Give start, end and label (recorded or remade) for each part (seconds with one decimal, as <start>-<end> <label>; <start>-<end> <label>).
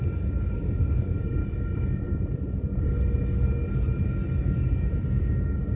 0.0-1.4 remade; 1.4-4.4 recorded; 4.4-5.8 remade